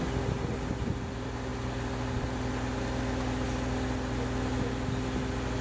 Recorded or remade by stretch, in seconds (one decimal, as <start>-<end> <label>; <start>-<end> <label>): 0.0-5.6 recorded